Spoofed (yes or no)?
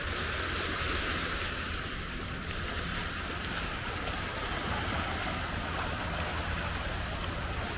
no